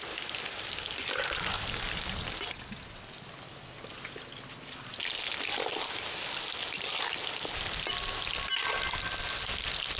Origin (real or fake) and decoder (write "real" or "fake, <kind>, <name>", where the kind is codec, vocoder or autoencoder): real